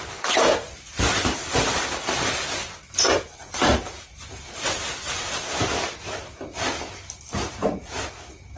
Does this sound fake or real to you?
real